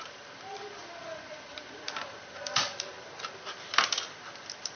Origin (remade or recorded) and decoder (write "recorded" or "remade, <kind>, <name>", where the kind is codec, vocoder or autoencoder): remade, vocoder, BigVGAN v2